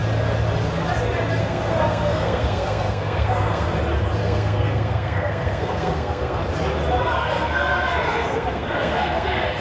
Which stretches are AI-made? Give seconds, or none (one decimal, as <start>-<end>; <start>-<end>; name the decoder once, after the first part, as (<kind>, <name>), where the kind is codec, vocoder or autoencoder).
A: 1.4-3.7 (codec, SNAC); 4.2-6.4; 7.0-9.6